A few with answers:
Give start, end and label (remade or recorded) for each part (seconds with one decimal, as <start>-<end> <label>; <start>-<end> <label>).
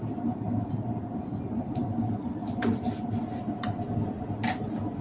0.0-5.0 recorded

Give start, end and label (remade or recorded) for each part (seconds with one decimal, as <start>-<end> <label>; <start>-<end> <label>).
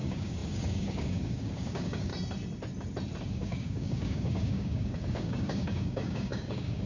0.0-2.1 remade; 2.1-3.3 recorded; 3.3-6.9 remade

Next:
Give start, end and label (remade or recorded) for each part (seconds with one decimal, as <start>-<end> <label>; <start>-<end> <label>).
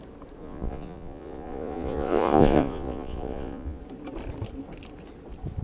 0.0-0.4 recorded; 0.4-3.8 remade; 3.8-5.6 recorded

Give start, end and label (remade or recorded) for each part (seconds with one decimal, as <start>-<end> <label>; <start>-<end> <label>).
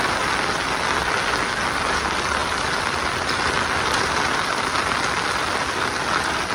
0.0-6.5 recorded